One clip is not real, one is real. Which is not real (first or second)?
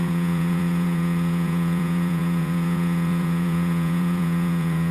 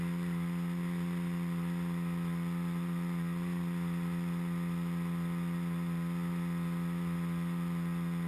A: first